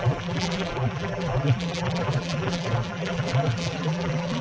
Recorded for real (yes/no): no